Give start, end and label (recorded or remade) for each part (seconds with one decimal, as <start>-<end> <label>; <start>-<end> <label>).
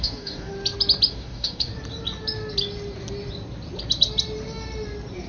0.0-0.5 remade; 0.5-1.1 recorded; 1.1-1.7 remade; 1.7-5.3 recorded